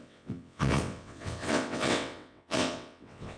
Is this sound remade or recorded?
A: remade